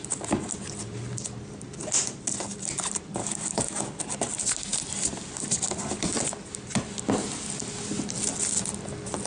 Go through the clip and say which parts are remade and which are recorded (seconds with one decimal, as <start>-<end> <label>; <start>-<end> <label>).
0.0-3.2 recorded; 3.2-4.0 remade; 4.0-9.3 recorded